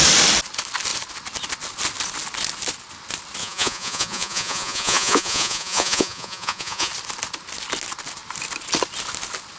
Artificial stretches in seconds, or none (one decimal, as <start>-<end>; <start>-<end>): 3.4-6.9